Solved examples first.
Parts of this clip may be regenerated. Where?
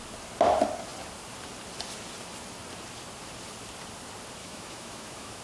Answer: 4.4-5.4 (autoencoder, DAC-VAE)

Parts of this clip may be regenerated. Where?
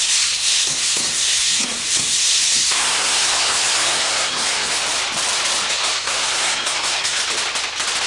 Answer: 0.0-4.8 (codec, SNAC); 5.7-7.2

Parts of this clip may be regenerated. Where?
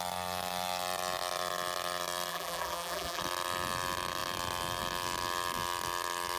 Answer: 2.3-3.2 (vocoder, BigVGAN v2)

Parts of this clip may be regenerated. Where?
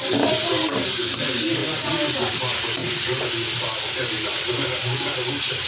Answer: 0.0-1.6 (vocoder, BigVGAN v2); 2.3-2.8; 3.8-5.7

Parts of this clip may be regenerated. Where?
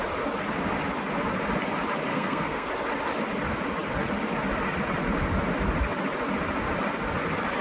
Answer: 2.1-2.7 (codec, SNAC)